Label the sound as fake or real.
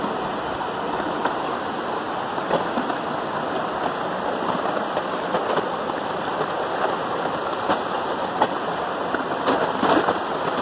real